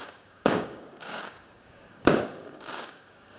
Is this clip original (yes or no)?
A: no